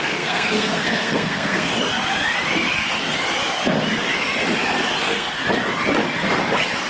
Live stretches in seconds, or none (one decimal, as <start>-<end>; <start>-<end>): 1.7-5.0; 5.4-6.9